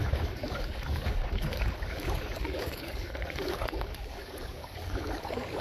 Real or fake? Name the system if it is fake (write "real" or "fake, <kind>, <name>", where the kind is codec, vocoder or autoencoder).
fake, codec, DAC